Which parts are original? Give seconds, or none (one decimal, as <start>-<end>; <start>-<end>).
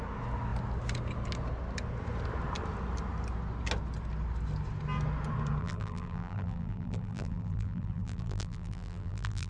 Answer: 0.0-5.6